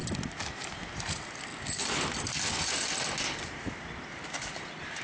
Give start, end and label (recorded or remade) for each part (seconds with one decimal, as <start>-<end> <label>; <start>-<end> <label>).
0.0-5.0 recorded